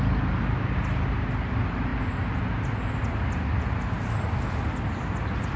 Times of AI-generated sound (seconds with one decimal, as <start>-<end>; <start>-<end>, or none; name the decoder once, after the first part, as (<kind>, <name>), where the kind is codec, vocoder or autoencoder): none